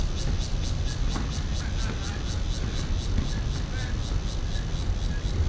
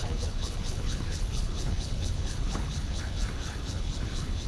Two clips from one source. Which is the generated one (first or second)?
second